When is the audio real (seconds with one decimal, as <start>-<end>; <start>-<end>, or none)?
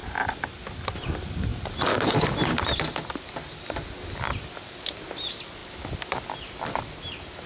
0.0-7.5